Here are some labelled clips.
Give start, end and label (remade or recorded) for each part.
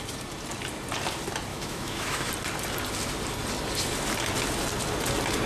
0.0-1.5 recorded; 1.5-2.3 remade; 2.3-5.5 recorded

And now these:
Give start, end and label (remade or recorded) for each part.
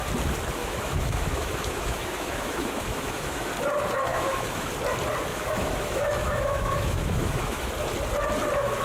0.0-0.6 recorded; 0.6-3.5 remade; 3.5-4.1 recorded; 4.1-4.7 remade; 4.7-5.3 recorded; 5.3-7.7 remade; 7.7-8.8 recorded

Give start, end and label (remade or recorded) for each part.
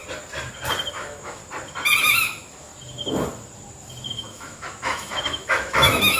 0.0-0.9 recorded; 0.9-1.4 remade; 1.4-2.0 recorded; 2.0-2.7 remade; 2.7-4.1 recorded; 4.1-6.2 remade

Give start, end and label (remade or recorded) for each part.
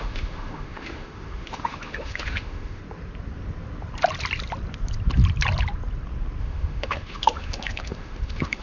0.0-2.8 remade; 2.8-6.4 recorded; 6.4-8.6 remade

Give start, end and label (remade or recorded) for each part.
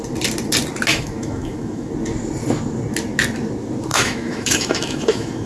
0.0-0.9 recorded; 0.9-1.9 remade; 1.9-3.9 recorded; 3.9-5.5 remade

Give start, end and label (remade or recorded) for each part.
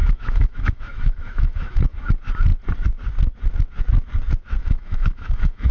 0.0-2.1 remade; 2.1-4.6 recorded; 4.6-5.7 remade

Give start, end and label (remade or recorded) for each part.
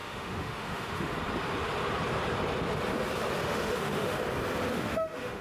0.0-1.1 remade; 1.1-3.4 recorded; 3.4-4.2 remade; 4.2-4.7 recorded; 4.7-5.4 remade